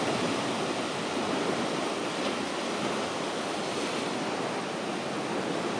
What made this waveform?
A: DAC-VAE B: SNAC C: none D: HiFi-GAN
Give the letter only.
C